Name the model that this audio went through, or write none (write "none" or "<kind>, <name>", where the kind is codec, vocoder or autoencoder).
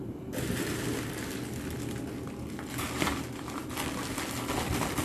none